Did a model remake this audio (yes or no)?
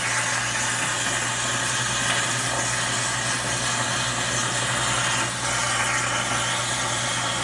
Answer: no